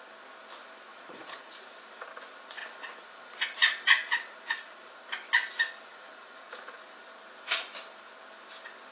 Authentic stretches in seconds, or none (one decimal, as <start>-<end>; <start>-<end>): 0.0-0.9; 1.8-2.6; 4.9-5.9; 7.0-8.9

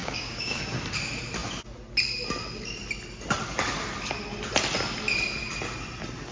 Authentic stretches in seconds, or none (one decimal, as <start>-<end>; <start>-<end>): 0.6-6.3